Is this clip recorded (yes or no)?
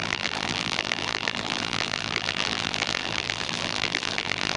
no